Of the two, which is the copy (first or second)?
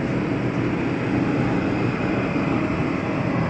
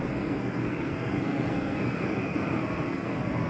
second